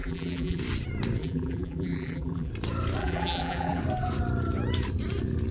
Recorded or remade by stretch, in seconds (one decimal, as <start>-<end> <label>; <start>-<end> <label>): 0.0-0.6 remade; 0.6-1.2 recorded; 1.2-2.5 remade; 2.5-3.0 recorded; 3.0-3.8 remade; 3.8-5.5 recorded